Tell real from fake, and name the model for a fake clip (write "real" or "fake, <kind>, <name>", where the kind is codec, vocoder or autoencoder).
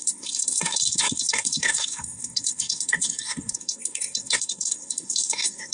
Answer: fake, codec, SNAC